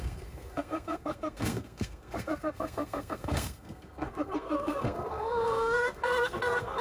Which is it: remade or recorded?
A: remade